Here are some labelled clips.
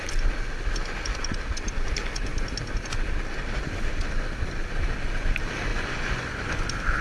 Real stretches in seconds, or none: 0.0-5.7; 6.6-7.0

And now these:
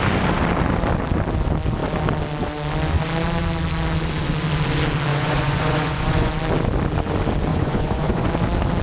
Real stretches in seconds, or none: 0.0-5.1; 6.3-7.5; 8.3-8.8

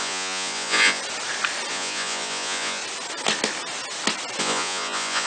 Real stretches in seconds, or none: 1.0-1.7; 2.8-4.4

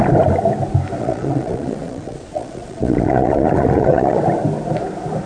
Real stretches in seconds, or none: 0.0-1.0; 4.2-5.3